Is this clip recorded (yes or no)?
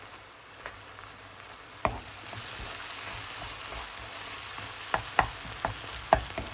yes